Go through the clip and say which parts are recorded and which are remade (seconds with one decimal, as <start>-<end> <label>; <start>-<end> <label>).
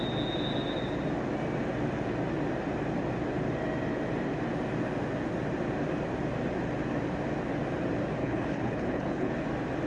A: 0.0-8.2 recorded; 8.2-9.3 remade; 9.3-9.9 recorded